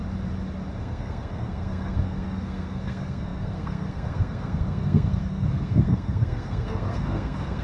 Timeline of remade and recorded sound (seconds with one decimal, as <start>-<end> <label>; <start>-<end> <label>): 0.0-0.8 recorded; 0.8-7.6 remade